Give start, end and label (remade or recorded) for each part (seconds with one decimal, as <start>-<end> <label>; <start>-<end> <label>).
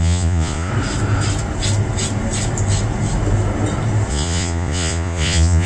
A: 0.0-0.7 remade; 0.7-4.1 recorded; 4.1-5.7 remade